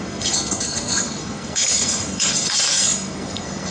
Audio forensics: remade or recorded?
remade